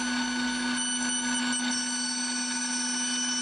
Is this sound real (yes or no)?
yes